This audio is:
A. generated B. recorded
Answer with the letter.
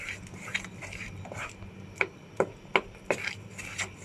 B